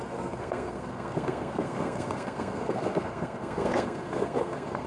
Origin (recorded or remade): remade